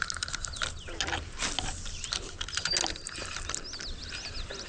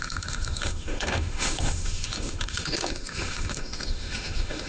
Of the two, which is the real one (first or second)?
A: first